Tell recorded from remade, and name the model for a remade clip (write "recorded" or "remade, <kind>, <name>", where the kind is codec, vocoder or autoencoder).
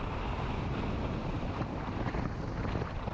recorded